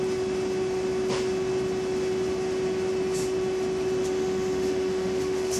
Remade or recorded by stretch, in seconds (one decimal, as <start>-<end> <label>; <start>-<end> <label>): 0.0-4.0 recorded; 4.0-5.6 remade

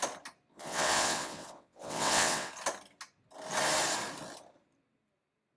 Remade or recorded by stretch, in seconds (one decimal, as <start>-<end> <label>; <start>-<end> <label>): 0.0-0.5 recorded; 0.5-2.5 remade; 2.5-5.6 recorded